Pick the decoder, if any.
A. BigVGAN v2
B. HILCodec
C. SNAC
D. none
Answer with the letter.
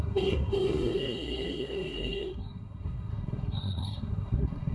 C